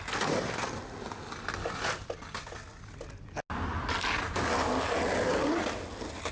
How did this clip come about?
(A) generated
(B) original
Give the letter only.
B